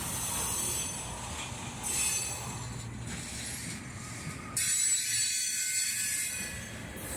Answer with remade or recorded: recorded